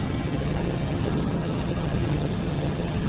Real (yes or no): no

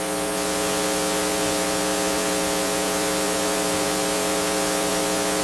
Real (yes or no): no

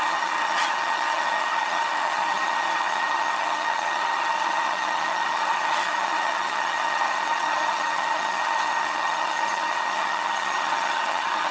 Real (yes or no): no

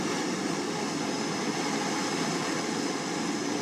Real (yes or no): yes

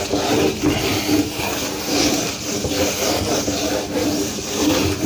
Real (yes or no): yes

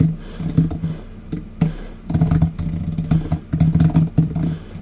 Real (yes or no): yes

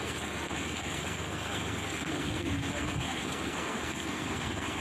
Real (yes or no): no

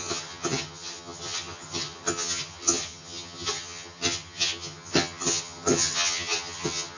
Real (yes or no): no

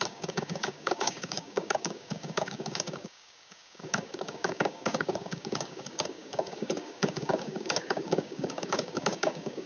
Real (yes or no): no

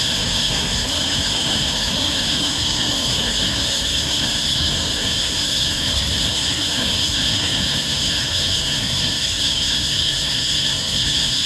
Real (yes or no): no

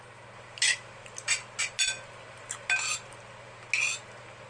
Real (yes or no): yes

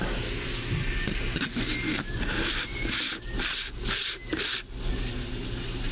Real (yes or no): yes